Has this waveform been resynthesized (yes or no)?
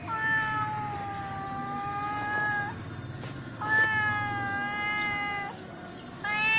no